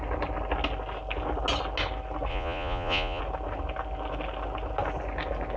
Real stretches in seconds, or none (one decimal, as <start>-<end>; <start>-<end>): 0.0-2.3; 3.2-5.6

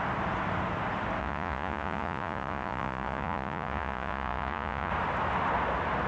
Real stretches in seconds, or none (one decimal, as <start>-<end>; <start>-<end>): 0.0-1.2; 4.9-6.1

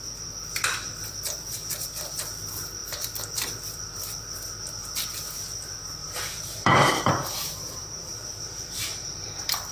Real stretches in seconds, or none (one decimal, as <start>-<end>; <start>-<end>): 0.0-6.0

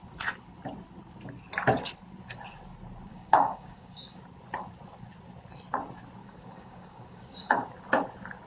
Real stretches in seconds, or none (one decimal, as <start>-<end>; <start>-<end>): 0.0-3.1; 4.2-6.2; 7.7-8.5

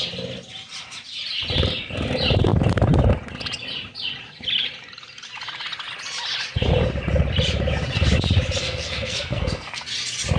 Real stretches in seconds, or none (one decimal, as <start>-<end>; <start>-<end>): 0.0-8.6; 9.8-10.4

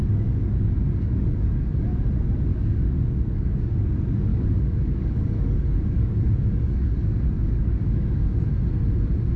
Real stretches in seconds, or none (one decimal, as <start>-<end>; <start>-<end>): 2.0-2.5; 3.9-4.3; 8.5-9.4

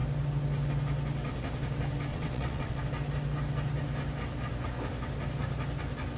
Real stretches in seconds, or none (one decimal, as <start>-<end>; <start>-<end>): 0.0-2.1; 2.8-6.2